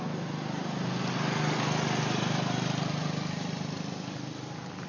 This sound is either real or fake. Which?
real